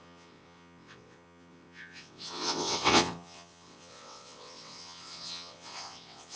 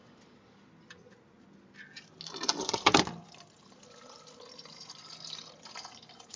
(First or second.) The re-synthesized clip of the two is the first